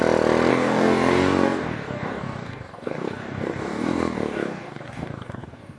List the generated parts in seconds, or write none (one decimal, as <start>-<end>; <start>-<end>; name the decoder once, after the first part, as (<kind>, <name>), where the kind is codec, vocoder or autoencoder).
0.5-5.8 (codec, DAC)